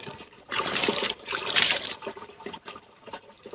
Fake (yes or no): yes